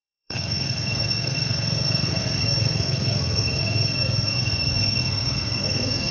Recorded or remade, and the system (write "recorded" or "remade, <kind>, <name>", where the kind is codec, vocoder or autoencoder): remade, codec, SNAC